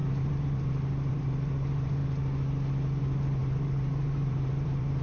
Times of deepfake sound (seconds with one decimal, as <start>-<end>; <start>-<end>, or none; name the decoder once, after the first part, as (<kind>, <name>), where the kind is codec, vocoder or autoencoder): 0.0-2.0 (vocoder, BigVGAN v2); 3.0-5.0